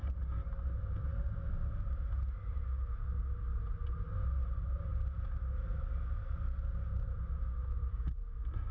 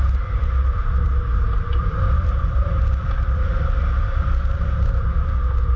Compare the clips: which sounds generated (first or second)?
second